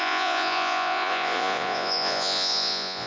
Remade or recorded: remade